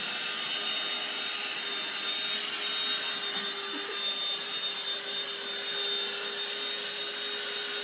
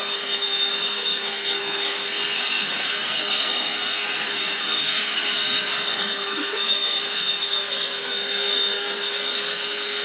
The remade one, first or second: second